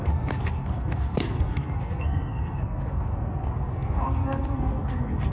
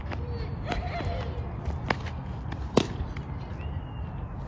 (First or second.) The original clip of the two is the second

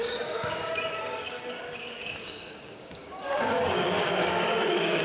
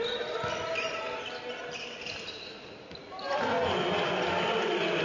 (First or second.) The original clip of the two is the second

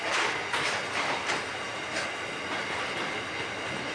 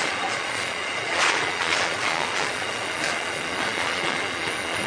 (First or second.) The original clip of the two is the first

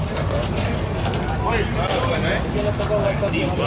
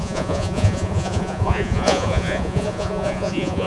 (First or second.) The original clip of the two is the first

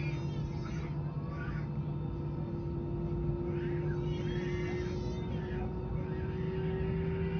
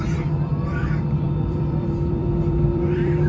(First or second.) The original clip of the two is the first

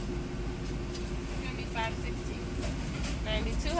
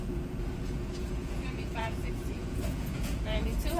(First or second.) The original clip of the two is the first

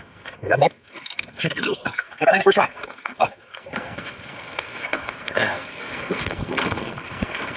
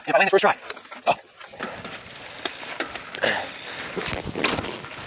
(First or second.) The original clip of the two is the second